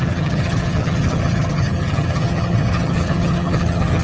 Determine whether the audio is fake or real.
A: fake